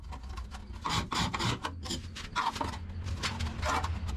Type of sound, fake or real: real